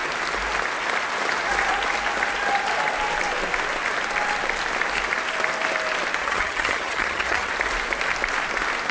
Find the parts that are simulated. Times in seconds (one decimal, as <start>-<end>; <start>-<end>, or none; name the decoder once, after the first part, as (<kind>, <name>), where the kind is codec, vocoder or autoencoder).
6.2-7.5 (vocoder, HiFi-GAN)